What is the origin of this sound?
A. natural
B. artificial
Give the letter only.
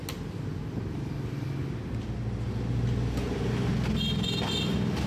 A